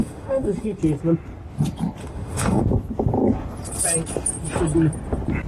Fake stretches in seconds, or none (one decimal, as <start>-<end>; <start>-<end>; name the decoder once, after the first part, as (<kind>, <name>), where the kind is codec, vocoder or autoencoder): 0.0-0.8 (autoencoder, DAC-VAE); 2.0-2.6